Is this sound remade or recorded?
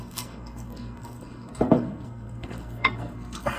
remade